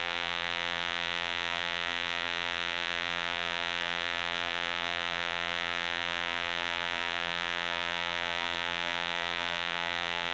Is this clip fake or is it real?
fake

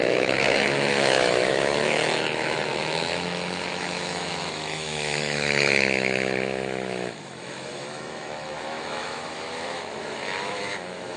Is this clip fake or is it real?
fake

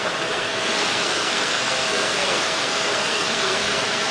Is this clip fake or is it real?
fake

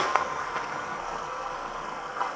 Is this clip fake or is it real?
fake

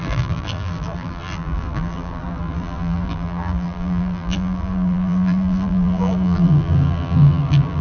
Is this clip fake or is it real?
fake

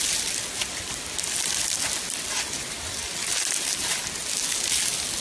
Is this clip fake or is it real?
real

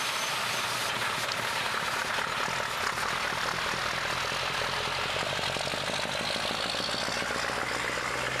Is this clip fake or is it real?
real